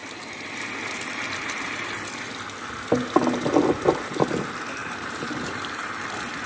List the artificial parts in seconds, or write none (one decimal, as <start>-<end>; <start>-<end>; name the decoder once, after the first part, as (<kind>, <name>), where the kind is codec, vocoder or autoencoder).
4.8-5.9 (vocoder, BigVGAN v2)